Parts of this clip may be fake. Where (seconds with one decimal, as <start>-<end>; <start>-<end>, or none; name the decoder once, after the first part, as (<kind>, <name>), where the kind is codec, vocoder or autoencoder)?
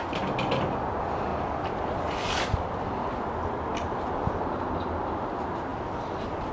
3.7-4.5 (vocoder, BigVGAN v2); 5.7-6.5